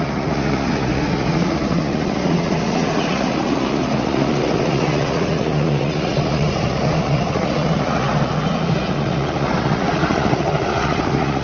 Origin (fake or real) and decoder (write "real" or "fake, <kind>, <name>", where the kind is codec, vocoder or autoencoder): fake, vocoder, Vocos